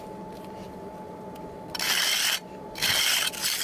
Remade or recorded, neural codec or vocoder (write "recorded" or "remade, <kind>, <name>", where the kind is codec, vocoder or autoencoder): recorded